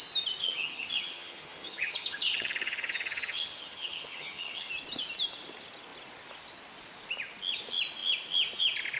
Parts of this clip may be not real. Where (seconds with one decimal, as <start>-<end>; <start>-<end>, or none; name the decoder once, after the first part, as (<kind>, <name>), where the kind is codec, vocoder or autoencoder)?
0.4-4.7 (vocoder, HiFi-GAN)